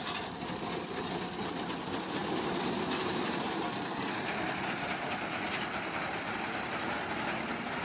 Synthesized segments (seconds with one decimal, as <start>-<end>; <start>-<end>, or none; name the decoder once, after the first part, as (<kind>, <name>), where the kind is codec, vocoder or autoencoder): none